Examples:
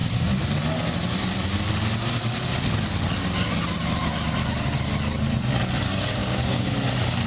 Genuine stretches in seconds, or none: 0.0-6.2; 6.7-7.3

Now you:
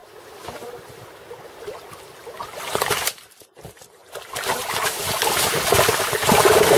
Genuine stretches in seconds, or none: 0.0-6.8

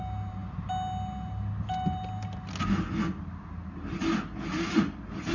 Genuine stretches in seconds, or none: 0.0-5.3

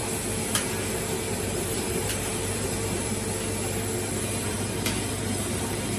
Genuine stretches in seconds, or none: 0.0-0.9; 3.1-4.3

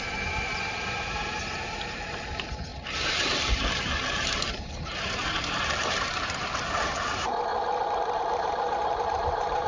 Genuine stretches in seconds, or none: 7.5-8.2

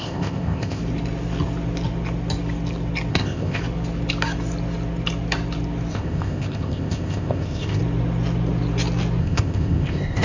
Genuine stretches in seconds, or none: 0.8-3.1; 3.6-5.9; 7.8-9.2